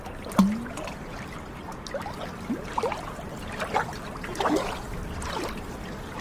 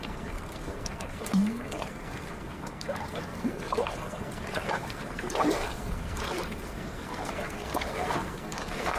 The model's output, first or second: second